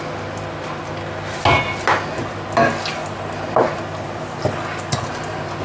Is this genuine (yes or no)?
yes